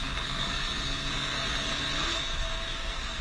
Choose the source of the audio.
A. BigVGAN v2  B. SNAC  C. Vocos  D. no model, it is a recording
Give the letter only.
B